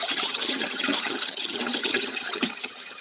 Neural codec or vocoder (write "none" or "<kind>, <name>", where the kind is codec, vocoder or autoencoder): vocoder, HiFi-GAN